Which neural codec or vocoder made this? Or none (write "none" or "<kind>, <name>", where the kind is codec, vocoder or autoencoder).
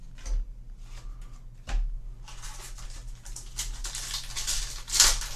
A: none